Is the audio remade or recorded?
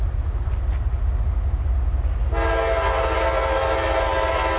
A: recorded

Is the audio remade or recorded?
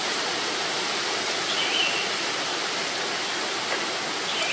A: recorded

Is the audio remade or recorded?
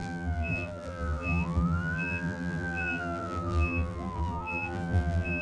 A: remade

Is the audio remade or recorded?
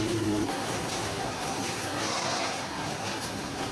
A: remade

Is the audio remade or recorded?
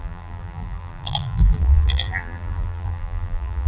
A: remade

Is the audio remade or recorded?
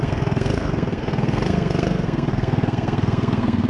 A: remade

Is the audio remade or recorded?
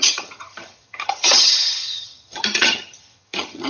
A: remade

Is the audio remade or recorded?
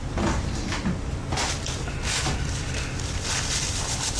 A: recorded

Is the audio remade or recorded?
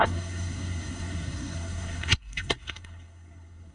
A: remade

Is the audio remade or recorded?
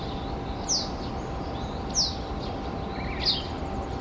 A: recorded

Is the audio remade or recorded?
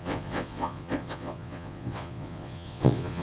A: remade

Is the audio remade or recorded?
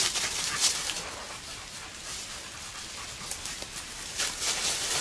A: recorded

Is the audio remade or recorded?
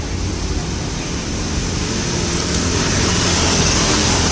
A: remade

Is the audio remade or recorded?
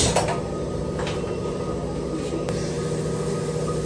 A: recorded